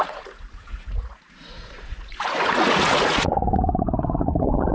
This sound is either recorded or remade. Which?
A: remade